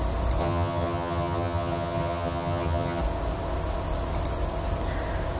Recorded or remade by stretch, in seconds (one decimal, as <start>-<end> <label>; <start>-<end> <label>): 0.0-0.4 recorded; 0.4-3.0 remade; 3.0-5.4 recorded